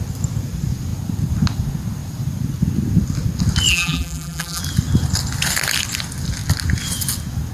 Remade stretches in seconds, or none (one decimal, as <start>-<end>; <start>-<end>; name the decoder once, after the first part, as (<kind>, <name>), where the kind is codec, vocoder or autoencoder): 3.7-4.6 (vocoder, BigVGAN v2)